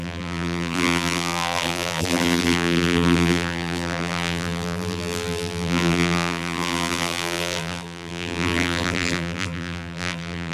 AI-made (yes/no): yes